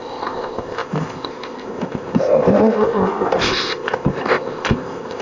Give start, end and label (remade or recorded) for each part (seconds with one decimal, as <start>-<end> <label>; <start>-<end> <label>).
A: 0.0-5.2 remade